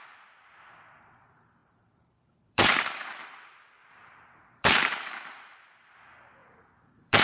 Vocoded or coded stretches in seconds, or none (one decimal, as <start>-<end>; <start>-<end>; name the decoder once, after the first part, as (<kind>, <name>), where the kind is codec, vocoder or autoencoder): 0.0-7.2 (vocoder, BigVGAN v2)